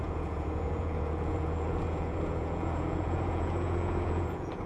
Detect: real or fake fake